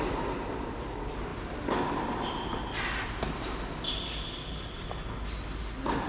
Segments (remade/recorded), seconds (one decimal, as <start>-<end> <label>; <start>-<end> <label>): 0.0-6.1 recorded